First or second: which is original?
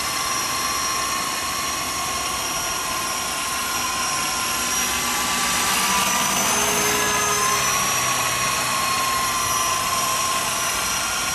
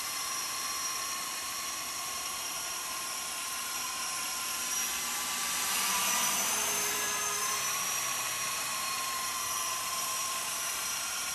first